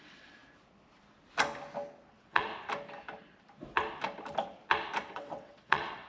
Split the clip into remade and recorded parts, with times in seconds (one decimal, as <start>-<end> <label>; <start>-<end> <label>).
0.0-0.4 remade; 0.4-2.1 recorded; 2.1-2.5 remade; 2.5-5.1 recorded; 5.1-6.1 remade